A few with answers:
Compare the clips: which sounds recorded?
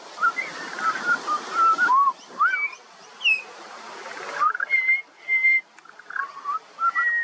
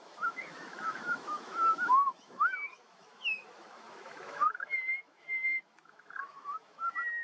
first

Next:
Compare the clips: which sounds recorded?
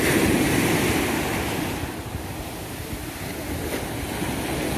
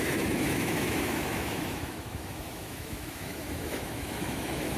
first